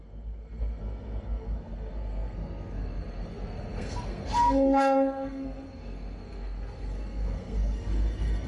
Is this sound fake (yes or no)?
yes